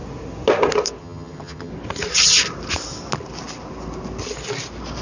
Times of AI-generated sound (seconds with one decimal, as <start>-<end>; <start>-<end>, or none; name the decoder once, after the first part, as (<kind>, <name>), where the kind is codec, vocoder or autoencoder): 1.0-1.7 (vocoder, HiFi-GAN)